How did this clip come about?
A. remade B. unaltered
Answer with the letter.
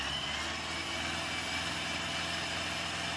B